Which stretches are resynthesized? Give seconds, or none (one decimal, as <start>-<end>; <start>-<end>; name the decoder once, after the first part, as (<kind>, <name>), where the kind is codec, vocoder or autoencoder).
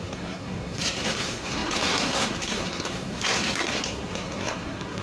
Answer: 0.0-5.0 (codec, SNAC)